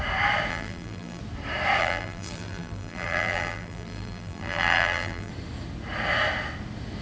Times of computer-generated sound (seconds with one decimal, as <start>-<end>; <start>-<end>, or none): 0.5-1.2; 1.8-5.3